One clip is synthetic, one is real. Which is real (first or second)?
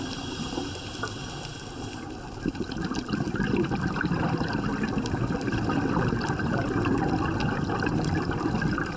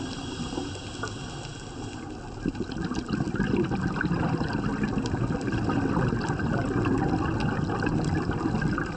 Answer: second